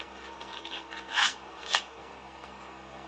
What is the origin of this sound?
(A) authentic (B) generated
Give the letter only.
B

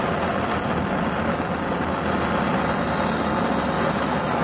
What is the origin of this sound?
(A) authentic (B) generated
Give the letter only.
A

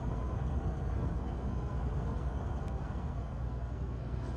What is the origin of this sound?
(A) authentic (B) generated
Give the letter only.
B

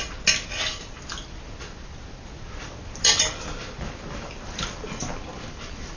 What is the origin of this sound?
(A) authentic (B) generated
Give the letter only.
A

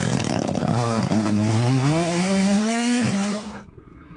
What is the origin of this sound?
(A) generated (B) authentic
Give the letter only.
A